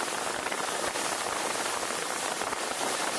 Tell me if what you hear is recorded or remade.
recorded